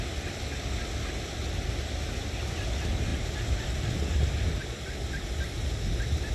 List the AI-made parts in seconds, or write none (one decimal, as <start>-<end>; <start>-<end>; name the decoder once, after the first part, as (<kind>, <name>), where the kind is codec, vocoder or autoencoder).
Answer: none